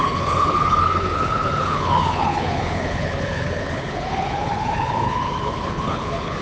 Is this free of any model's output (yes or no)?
no